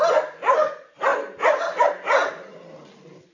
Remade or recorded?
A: recorded